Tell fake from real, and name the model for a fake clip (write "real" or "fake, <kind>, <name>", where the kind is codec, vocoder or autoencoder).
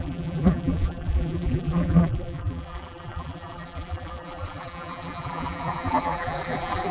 fake, vocoder, BigVGAN v2